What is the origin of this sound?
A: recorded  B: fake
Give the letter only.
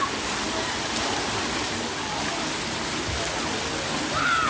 A